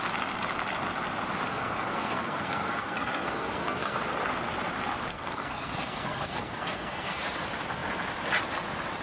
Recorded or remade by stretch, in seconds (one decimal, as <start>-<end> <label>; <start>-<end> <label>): 0.0-1.5 recorded; 1.5-4.0 remade; 4.0-5.1 recorded; 5.1-7.2 remade; 7.2-9.0 recorded